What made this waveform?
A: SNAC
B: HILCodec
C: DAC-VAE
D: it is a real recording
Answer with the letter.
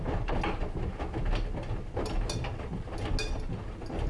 D